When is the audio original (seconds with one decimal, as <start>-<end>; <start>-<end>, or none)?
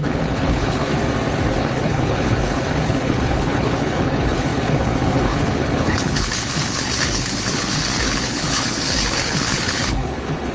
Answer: 0.9-1.5